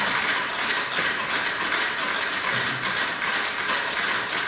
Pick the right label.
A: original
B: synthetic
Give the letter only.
A